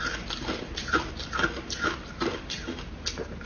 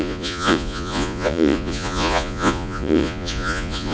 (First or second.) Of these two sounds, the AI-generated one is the second